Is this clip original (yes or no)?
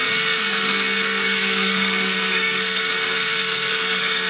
no